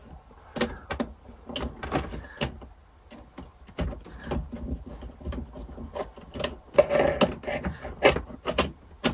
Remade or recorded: recorded